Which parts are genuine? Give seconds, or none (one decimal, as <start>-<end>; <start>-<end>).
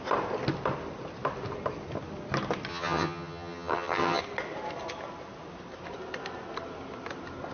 0.0-2.7; 4.2-7.5